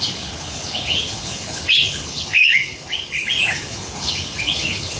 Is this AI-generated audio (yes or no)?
yes